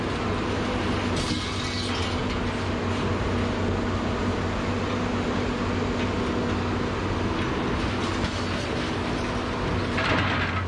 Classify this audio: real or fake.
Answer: real